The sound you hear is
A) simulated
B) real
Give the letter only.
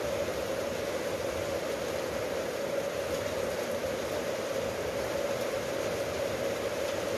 B